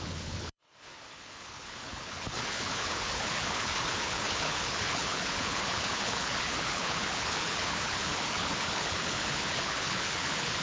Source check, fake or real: fake